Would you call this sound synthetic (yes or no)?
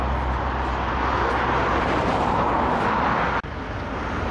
no